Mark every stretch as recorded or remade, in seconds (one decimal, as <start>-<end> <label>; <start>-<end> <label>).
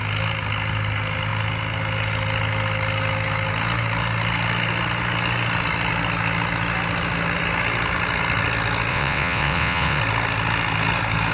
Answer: 0.0-8.9 recorded; 8.9-10.0 remade; 10.0-11.3 recorded